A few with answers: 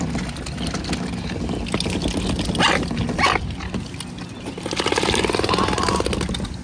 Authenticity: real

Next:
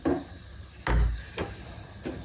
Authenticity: real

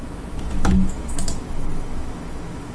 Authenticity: fake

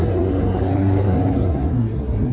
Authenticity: fake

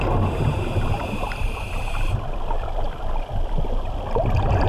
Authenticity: real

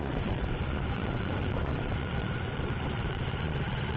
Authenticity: fake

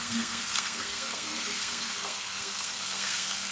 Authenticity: fake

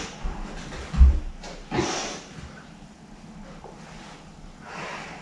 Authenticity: real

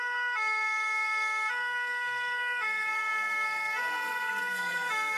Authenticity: fake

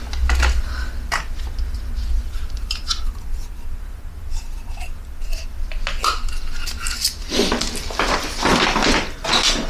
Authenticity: real